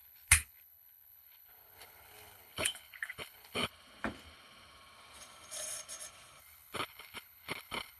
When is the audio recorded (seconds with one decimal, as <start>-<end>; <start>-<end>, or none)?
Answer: 3.7-6.4